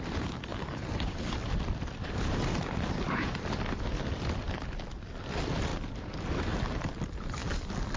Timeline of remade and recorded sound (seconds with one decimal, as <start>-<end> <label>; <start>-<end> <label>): 0.0-0.5 recorded; 0.5-3.9 remade; 3.9-5.7 recorded; 5.7-6.9 remade; 6.9-8.0 recorded